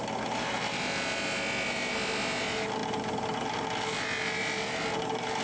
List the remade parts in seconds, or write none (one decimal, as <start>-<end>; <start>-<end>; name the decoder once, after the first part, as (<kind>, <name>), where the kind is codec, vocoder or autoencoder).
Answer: none